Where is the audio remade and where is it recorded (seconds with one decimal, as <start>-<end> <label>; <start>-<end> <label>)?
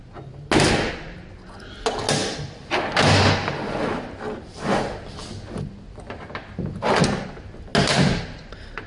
0.0-8.9 recorded